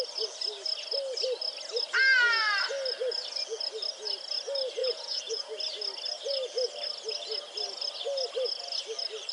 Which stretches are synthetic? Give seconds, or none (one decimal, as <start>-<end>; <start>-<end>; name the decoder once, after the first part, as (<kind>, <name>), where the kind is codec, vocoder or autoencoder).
4.8-5.5 (vocoder, Vocos)